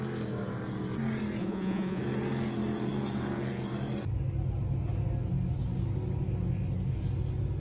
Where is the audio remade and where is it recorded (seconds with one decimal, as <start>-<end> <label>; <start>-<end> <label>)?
0.0-1.4 recorded; 1.4-2.0 remade; 2.0-7.6 recorded

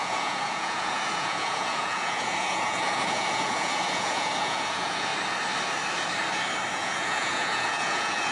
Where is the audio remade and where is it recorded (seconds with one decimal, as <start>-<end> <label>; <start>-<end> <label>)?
0.0-5.1 remade; 5.1-6.7 recorded; 6.7-8.3 remade

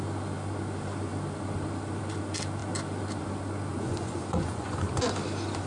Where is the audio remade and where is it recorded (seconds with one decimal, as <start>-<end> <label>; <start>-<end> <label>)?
0.0-3.7 recorded; 3.7-4.9 remade; 4.9-5.7 recorded

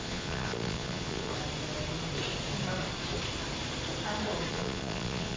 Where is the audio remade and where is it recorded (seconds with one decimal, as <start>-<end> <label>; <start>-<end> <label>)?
0.0-1.3 remade; 1.3-4.5 recorded; 4.5-5.4 remade

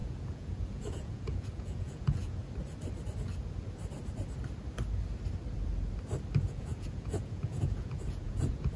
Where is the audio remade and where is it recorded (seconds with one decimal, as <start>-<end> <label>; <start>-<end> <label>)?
0.0-2.4 remade; 2.4-6.5 recorded; 6.5-8.8 remade